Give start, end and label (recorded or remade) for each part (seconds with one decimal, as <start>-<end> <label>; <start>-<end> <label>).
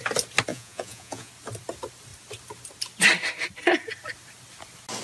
0.0-0.5 recorded; 0.5-1.3 remade; 1.3-5.0 recorded